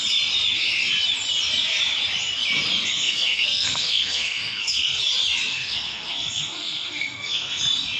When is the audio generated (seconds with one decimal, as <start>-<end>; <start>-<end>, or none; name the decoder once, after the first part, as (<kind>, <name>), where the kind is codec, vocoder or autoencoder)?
2.9-5.0 (codec, SNAC); 5.5-7.6